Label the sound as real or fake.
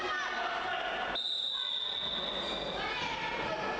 real